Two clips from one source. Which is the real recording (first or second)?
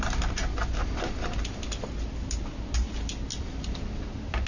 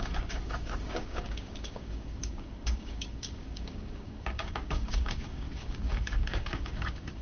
first